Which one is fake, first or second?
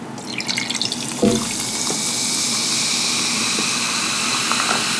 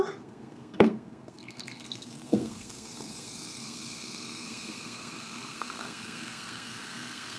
second